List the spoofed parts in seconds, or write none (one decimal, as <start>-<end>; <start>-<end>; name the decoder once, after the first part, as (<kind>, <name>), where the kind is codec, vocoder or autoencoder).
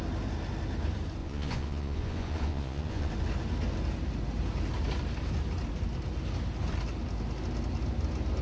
1.2-3.1 (vocoder, Vocos)